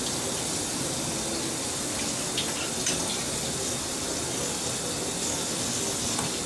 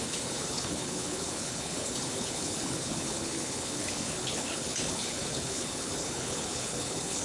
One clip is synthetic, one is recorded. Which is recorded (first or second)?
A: first